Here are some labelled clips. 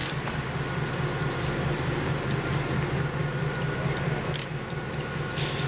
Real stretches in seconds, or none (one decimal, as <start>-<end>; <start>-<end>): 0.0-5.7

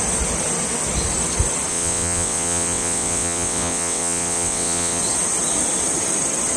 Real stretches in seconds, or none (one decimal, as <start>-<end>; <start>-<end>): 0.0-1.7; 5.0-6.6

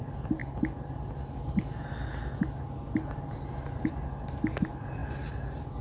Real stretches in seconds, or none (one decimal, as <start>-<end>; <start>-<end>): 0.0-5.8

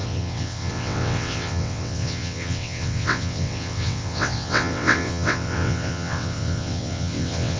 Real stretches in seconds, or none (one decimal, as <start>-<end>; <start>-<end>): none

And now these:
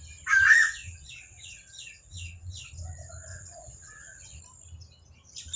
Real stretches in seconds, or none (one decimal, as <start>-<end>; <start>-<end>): 0.0-0.5; 2.7-3.3; 4.4-5.6

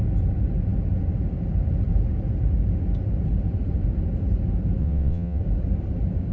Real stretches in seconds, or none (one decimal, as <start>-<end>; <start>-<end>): 0.0-4.8; 5.4-6.3

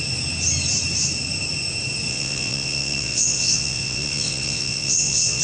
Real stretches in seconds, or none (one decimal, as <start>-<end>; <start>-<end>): 0.0-2.1

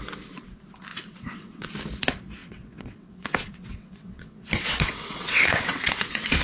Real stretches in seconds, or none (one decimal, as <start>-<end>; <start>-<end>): 0.0-0.9; 1.7-2.4